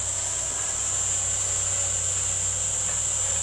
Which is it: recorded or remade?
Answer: recorded